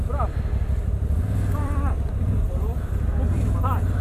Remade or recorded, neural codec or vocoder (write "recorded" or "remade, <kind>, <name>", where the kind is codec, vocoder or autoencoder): remade, vocoder, BigVGAN v2